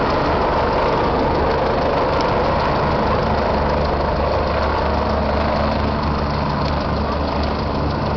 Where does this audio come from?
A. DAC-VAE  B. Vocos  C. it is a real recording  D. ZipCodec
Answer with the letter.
C